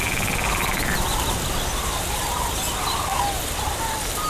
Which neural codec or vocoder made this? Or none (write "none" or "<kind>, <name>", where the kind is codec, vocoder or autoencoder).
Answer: none